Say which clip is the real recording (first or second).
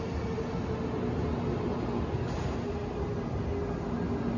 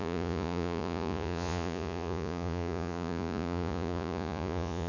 first